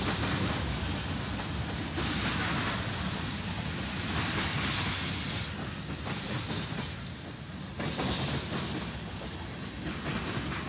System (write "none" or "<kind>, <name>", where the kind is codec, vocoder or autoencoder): none